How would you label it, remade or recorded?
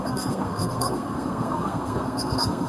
remade